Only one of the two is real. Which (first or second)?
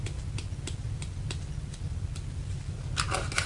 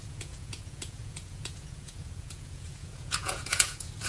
first